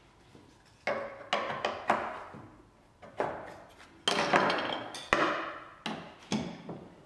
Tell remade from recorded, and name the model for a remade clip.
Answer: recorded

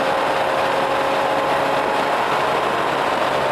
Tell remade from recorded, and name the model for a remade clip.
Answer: recorded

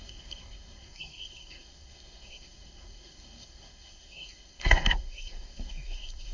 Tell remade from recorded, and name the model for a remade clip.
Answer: remade, codec, SNAC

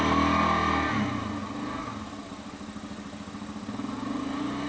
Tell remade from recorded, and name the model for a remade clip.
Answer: recorded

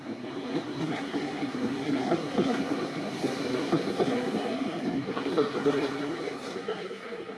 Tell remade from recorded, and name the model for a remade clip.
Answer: remade, codec, SNAC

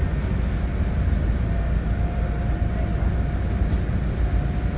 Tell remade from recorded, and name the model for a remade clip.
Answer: recorded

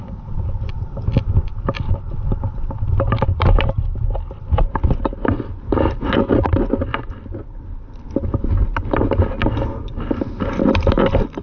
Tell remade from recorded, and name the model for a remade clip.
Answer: recorded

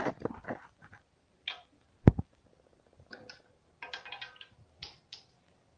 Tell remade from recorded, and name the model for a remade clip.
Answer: recorded